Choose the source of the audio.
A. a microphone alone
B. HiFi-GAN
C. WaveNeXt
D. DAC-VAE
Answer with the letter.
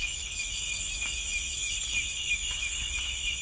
D